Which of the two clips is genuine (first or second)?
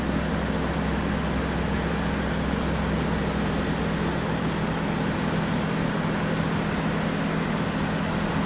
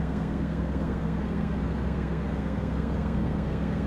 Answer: first